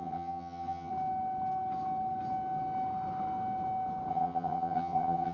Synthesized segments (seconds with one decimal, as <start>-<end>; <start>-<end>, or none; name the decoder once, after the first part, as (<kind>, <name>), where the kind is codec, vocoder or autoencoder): 0.0-0.9 (vocoder, HiFi-GAN); 4.1-5.3